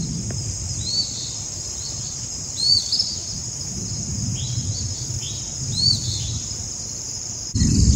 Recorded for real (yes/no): yes